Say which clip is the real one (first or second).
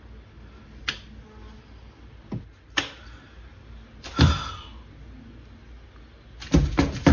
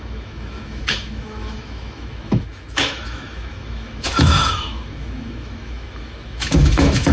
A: first